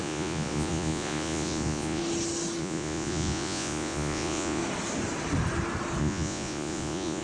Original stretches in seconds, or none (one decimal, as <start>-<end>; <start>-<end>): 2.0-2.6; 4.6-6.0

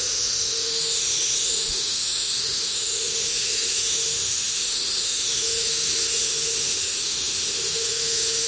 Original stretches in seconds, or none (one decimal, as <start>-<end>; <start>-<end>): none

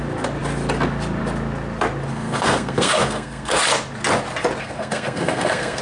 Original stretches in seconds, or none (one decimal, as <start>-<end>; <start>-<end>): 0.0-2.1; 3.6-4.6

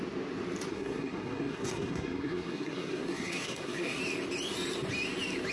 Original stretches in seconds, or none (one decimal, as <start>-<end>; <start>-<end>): 0.0-0.7; 4.0-5.5